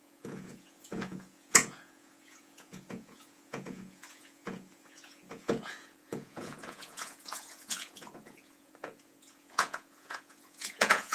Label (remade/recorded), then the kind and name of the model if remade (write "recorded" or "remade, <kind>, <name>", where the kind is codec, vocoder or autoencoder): remade, vocoder, Vocos